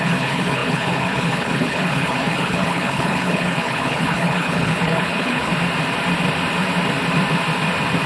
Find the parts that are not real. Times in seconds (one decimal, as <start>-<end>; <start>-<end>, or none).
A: 0.0-5.5